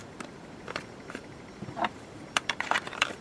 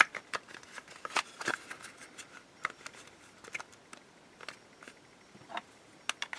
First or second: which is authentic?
second